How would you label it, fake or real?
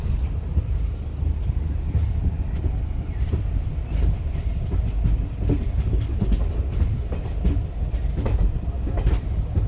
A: real